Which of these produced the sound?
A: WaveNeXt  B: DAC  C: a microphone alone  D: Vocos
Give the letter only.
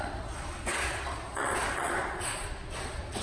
D